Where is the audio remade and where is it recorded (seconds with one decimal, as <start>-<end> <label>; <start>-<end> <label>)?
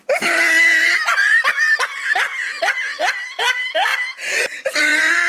0.0-5.3 recorded